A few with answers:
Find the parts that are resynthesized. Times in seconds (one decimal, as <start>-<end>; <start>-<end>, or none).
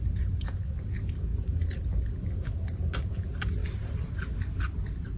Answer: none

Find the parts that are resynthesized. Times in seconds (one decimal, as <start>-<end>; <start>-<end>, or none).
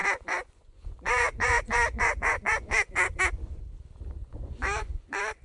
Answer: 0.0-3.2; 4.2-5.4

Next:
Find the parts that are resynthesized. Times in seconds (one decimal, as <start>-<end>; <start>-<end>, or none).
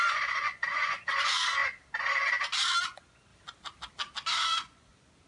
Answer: 0.0-1.6; 2.8-3.3; 4.3-5.3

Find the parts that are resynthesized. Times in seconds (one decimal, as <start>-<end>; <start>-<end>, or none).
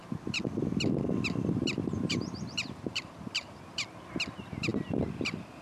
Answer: 1.8-3.7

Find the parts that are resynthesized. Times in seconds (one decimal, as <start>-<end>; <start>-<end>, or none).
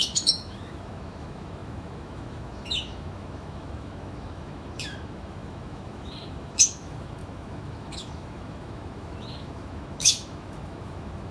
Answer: 0.0-11.3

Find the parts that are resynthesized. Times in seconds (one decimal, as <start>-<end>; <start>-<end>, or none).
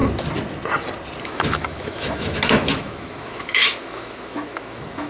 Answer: 1.2-5.1